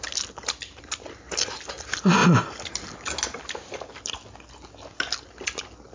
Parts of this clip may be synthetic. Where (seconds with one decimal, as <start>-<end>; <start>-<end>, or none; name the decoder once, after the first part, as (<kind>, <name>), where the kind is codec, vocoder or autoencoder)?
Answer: none